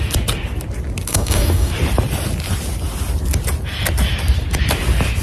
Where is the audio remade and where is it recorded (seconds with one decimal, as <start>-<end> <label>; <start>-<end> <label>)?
0.0-1.1 recorded; 1.1-1.7 remade; 1.7-5.2 recorded

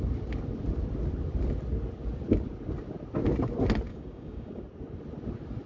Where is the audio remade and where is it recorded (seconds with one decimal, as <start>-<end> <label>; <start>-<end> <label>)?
0.0-3.9 recorded; 3.9-4.6 remade; 4.6-5.7 recorded

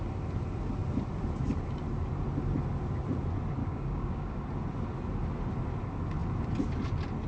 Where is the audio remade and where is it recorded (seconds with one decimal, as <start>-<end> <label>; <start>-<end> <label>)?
0.0-3.6 recorded; 3.6-4.4 remade; 4.4-7.3 recorded

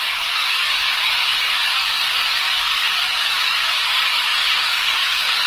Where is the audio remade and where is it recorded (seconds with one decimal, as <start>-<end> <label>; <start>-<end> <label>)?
0.0-5.5 remade

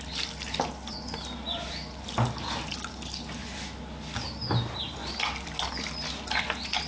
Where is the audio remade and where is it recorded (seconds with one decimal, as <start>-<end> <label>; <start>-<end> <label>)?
0.0-6.9 recorded

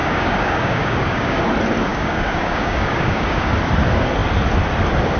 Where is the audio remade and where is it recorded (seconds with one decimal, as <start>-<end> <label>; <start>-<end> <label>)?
0.0-1.4 remade; 1.4-1.9 recorded; 1.9-3.5 remade; 3.5-5.2 recorded

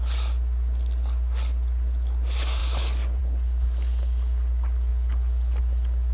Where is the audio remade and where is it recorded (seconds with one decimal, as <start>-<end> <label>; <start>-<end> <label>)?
0.0-6.1 recorded

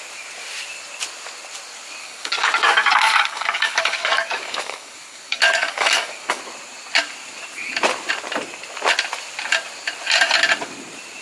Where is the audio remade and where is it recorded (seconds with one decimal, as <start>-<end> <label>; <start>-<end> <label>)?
0.0-2.0 recorded; 2.0-6.4 remade; 6.4-11.2 recorded